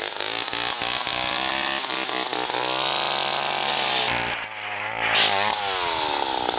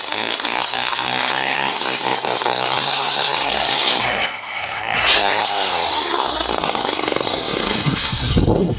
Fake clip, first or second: second